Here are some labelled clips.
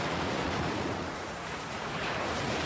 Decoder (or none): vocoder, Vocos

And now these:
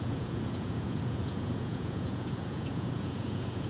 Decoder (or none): vocoder, Vocos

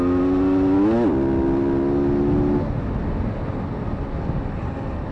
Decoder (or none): none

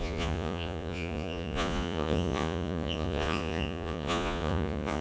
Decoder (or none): vocoder, Vocos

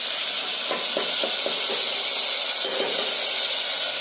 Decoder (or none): none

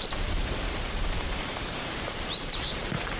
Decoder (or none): vocoder, BigVGAN v2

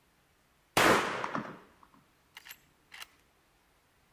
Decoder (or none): none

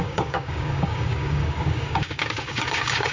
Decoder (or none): codec, DAC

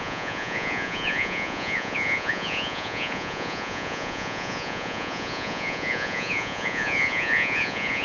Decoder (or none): vocoder, Vocos